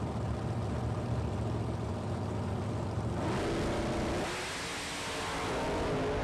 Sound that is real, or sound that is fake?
real